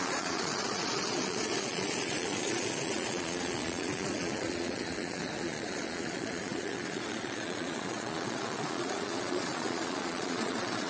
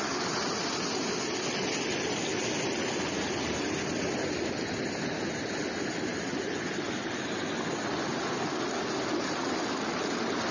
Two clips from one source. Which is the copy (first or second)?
first